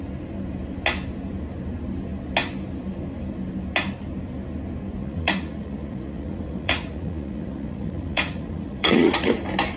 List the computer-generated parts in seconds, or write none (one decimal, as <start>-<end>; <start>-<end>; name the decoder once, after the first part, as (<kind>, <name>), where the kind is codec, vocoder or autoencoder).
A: 5.0-9.3 (vocoder, Vocos)